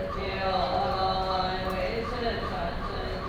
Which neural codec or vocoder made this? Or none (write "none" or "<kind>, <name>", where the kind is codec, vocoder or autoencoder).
none